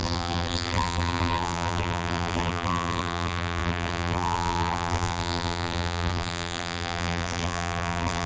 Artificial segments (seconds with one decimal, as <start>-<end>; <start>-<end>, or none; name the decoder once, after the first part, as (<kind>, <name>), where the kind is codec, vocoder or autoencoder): 0.0-8.3 (vocoder, BigVGAN v2)